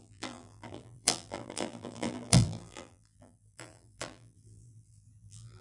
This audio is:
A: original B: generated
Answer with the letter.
B